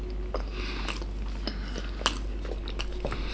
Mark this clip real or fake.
real